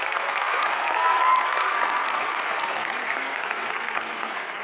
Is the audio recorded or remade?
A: remade